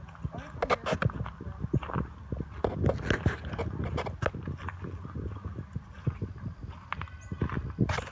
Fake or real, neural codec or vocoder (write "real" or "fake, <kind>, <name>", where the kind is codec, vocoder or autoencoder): real